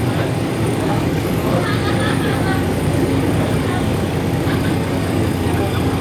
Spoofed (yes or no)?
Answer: yes